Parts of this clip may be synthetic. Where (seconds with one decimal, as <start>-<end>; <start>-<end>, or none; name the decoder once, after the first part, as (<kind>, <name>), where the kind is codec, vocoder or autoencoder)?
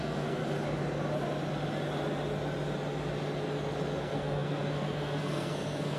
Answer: 0.0-0.4 (codec, SNAC); 4.0-6.0